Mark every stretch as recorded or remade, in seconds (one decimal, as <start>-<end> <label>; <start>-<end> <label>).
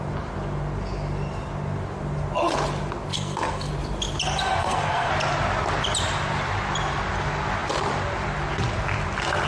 0.0-3.1 recorded; 3.1-3.7 remade; 3.7-4.6 recorded; 4.6-5.1 remade; 5.1-9.5 recorded